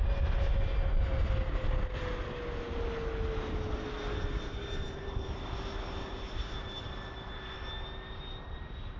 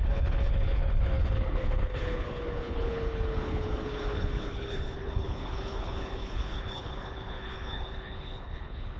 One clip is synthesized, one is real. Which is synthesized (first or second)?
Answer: second